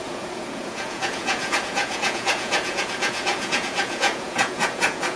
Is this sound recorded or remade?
remade